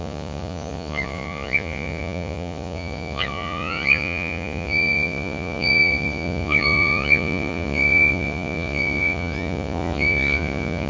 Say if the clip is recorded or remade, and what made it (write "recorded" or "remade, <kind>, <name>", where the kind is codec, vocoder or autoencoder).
remade, vocoder, Vocos